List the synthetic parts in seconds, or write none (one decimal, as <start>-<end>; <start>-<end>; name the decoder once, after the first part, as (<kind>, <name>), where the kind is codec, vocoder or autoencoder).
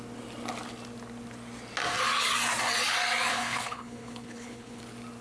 3.3-4.8 (codec, HILCodec)